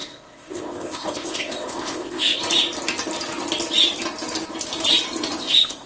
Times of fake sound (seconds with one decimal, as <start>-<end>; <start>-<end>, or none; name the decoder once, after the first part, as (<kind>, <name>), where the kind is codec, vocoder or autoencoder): 0.0-2.4 (codec, ZipCodec); 5.4-5.9